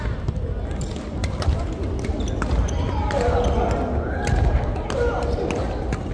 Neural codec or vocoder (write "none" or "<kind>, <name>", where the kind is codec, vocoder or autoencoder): none